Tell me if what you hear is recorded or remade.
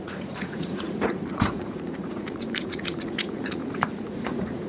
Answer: remade